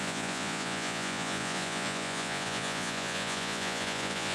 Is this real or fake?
fake